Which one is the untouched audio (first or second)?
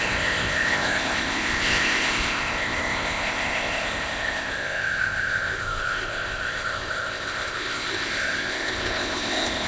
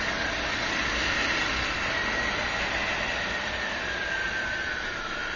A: second